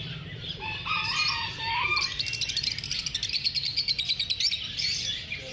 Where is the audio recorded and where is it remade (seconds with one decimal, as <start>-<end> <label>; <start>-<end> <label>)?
0.0-5.5 recorded